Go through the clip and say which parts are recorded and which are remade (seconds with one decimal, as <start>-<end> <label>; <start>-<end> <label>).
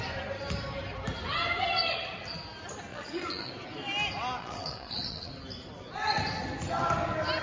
0.0-2.9 recorded; 2.9-3.5 remade; 3.5-4.4 recorded; 4.4-5.3 remade; 5.3-7.4 recorded